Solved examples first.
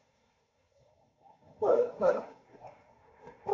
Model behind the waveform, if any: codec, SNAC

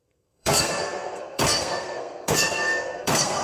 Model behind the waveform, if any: codec, SNAC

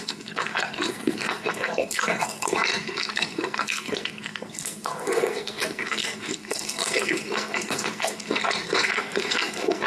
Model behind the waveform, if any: codec, SNAC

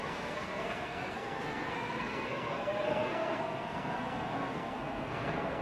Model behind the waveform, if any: codec, SNAC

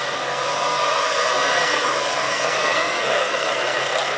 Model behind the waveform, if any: codec, SNAC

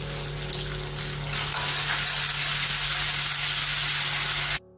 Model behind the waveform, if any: none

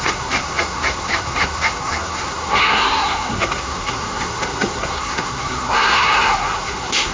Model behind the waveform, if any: codec, SNAC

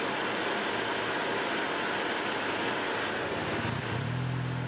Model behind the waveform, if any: none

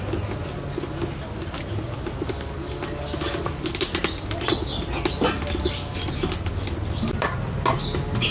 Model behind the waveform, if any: none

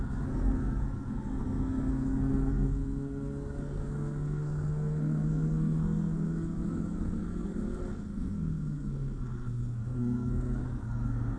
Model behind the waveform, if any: codec, SNAC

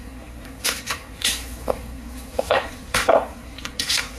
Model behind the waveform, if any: codec, SNAC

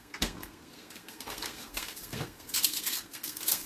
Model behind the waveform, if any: codec, SNAC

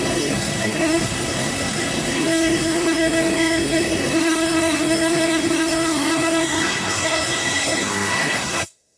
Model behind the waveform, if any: codec, SNAC